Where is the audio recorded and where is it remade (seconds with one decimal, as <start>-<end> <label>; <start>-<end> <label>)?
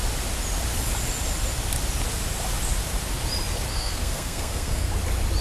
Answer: 0.0-3.7 recorded; 3.7-4.9 remade; 4.9-5.4 recorded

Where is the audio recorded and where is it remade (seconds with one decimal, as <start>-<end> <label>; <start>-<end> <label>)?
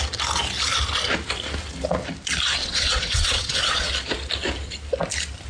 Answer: 0.0-2.6 recorded; 2.6-3.9 remade; 3.9-5.5 recorded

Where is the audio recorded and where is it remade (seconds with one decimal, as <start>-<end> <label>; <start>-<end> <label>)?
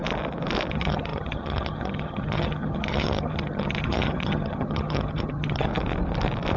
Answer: 0.0-0.7 recorded; 0.7-5.7 remade; 5.7-6.6 recorded